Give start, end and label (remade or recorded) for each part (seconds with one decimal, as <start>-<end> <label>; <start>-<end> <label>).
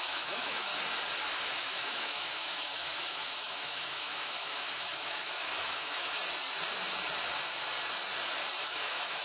0.0-0.7 remade; 0.7-1.4 recorded; 1.4-6.2 remade; 6.2-8.6 recorded; 8.6-9.2 remade